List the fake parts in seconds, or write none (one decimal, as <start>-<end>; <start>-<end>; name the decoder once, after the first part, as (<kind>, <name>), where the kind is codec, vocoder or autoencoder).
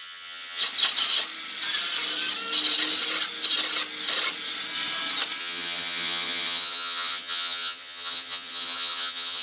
0.0-0.6 (vocoder, HiFi-GAN); 5.4-9.4